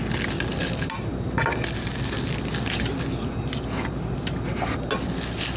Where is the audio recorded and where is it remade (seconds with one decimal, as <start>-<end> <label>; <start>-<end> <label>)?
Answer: 0.0-5.6 recorded